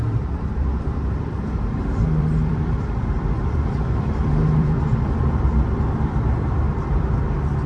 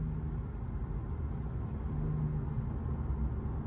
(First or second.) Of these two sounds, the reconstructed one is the first